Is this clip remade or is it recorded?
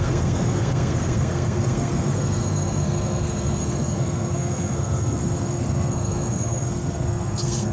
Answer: remade